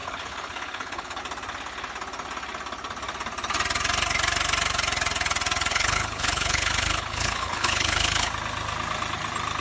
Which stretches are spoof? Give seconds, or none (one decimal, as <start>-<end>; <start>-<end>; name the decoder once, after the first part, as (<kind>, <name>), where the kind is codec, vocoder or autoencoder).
0.0-1.2 (codec, HILCodec); 5.7-8.3